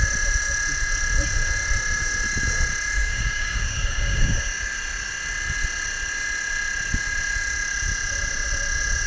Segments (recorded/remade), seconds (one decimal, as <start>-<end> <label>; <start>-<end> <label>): 0.0-3.0 recorded; 3.0-4.4 remade; 4.4-9.1 recorded

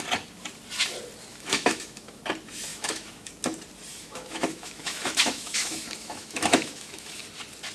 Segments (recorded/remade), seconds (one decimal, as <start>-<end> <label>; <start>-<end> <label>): 0.0-1.3 recorded; 1.3-2.2 remade; 2.2-2.7 recorded; 2.7-3.3 remade; 3.3-3.9 recorded; 3.9-7.2 remade; 7.2-7.7 recorded

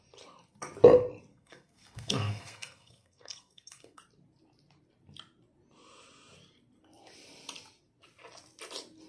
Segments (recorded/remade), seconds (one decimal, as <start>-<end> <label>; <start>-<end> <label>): 0.0-1.3 recorded; 1.3-4.0 remade; 4.0-9.1 recorded

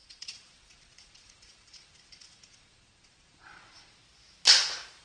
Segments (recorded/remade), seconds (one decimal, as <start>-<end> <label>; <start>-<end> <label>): 0.0-4.0 remade; 4.0-5.0 recorded

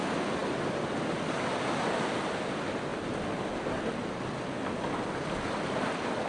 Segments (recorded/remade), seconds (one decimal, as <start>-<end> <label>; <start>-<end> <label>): 0.0-6.3 recorded